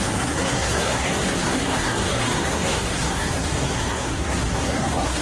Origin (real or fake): fake